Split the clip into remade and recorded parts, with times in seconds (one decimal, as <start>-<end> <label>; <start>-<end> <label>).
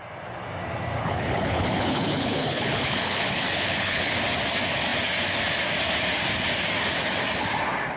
0.0-1.0 recorded; 1.0-4.1 remade; 4.1-8.0 recorded